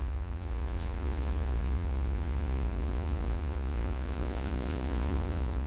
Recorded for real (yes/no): no